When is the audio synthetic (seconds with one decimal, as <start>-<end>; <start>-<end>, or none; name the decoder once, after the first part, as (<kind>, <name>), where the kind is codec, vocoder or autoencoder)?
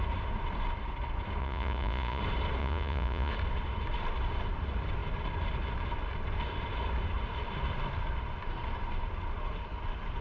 1.4-2.2 (vocoder, Vocos); 2.6-3.3